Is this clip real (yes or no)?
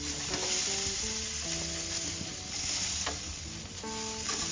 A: yes